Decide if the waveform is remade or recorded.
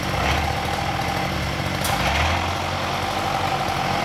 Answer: recorded